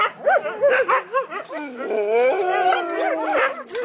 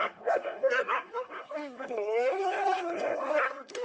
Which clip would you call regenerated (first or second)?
second